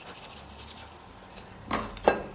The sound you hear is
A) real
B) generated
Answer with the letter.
A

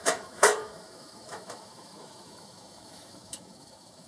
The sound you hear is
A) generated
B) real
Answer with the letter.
A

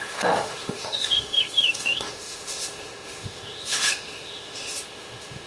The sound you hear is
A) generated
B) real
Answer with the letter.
A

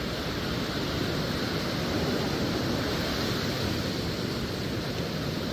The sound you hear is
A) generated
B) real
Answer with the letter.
A